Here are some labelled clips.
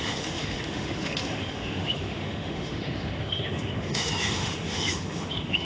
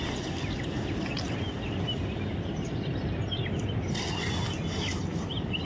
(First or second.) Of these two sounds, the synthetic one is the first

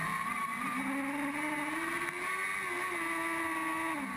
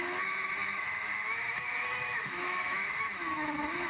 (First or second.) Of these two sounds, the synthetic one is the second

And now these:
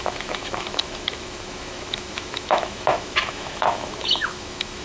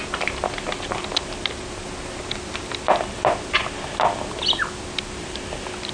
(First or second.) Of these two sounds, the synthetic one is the first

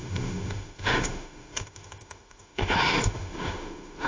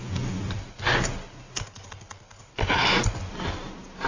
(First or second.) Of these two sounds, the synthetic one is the first